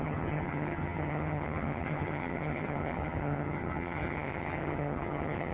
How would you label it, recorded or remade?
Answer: remade